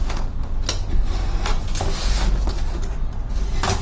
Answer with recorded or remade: recorded